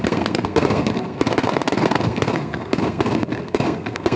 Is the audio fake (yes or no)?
yes